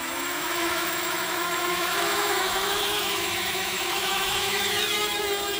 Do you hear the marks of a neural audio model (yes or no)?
yes